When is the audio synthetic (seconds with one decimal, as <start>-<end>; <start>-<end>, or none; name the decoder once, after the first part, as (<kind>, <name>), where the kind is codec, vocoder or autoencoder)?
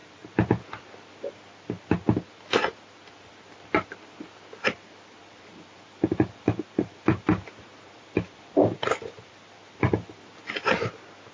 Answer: 0.0-0.6 (vocoder, BigVGAN v2); 5.2-9.9